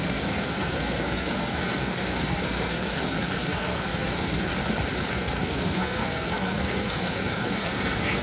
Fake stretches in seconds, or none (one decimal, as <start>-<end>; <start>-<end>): 0.0-4.5; 5.1-8.2